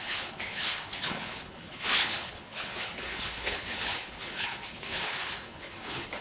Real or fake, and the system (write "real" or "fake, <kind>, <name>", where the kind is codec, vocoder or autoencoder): fake, codec, HILCodec